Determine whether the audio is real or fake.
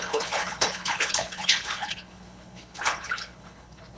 fake